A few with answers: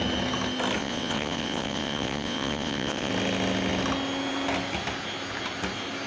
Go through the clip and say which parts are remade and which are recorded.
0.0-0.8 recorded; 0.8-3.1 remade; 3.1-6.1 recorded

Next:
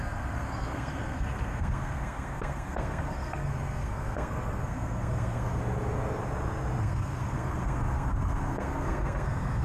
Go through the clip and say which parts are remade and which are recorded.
0.0-5.6 remade; 5.6-6.8 recorded; 6.8-9.6 remade

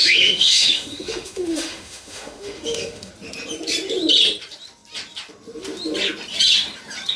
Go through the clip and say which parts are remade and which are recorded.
0.0-3.1 remade; 3.1-7.2 recorded

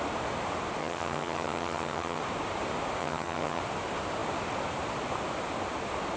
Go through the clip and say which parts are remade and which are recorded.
0.0-0.8 recorded; 0.8-2.2 remade; 2.2-3.0 recorded; 3.0-3.6 remade; 3.6-6.2 recorded

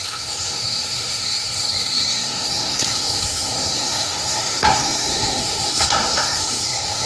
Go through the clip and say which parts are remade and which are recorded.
0.0-7.1 remade

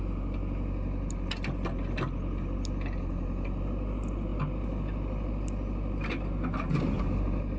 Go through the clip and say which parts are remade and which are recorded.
0.0-7.6 recorded

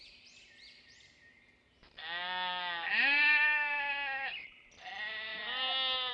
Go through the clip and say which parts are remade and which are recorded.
0.0-6.1 recorded

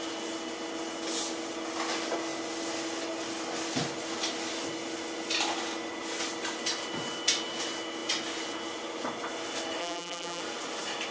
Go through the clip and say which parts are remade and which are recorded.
0.0-9.8 recorded; 9.8-10.4 remade; 10.4-11.1 recorded